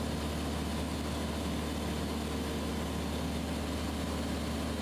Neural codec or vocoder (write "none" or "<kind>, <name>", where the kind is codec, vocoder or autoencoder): none